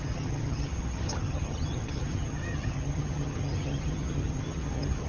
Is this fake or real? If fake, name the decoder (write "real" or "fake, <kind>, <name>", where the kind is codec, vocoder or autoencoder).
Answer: fake, vocoder, HiFi-GAN